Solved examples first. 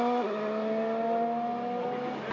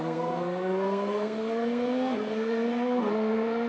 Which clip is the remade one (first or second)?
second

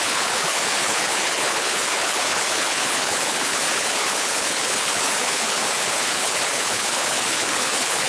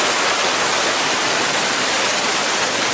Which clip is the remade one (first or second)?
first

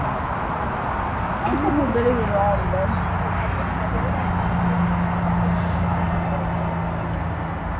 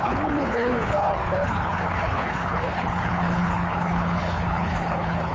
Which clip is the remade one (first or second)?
second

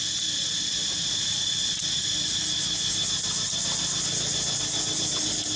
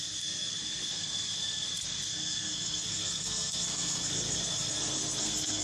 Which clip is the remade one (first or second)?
second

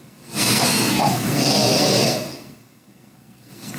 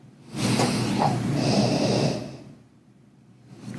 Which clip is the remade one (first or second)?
first